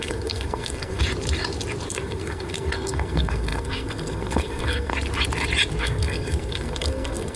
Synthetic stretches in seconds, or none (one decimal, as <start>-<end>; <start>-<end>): 0.0-1.0; 1.9-4.9; 5.8-7.4